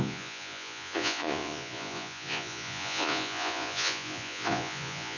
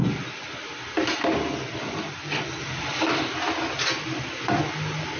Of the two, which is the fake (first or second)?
first